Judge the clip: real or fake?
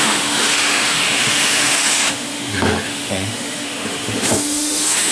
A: fake